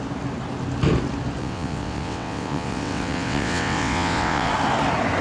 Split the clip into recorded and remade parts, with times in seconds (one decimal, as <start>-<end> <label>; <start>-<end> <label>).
0.0-1.4 recorded; 1.4-4.5 remade; 4.5-5.2 recorded